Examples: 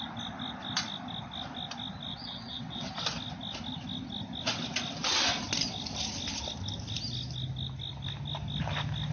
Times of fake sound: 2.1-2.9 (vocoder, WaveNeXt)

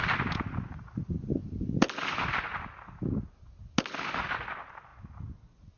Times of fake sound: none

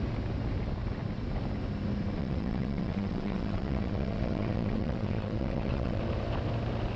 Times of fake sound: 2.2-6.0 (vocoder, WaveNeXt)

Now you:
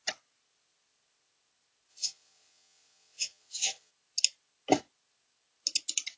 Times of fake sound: 1.9-3.9 (vocoder, WaveNeXt)

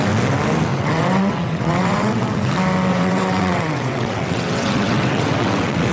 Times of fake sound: 0.7-2.5 (vocoder, WaveNeXt); 2.9-5.9

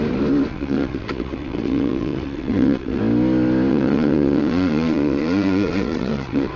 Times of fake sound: 0.5-3.0 (vocoder, WaveNeXt); 3.7-6.6

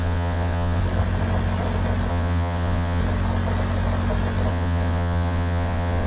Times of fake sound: 0.0-0.8 (vocoder, WaveNeXt); 2.1-3.0; 4.5-6.1

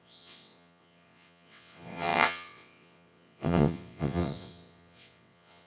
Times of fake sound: 0.0-5.7 (vocoder, WaveNeXt)